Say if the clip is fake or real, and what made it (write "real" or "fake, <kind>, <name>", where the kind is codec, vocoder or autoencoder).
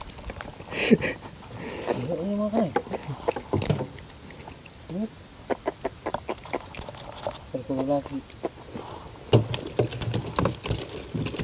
real